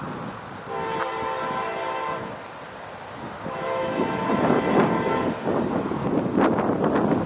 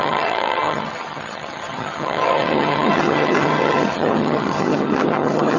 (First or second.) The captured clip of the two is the first